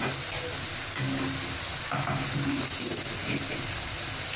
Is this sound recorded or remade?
recorded